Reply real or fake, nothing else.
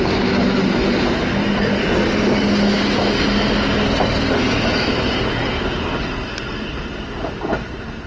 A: real